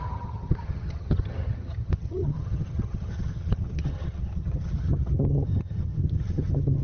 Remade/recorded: remade